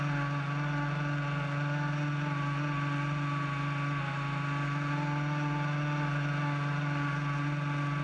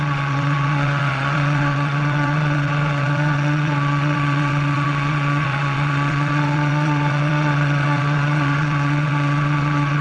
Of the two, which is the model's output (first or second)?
second